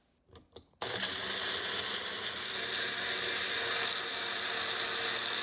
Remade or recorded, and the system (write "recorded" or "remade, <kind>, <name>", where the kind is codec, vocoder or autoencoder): recorded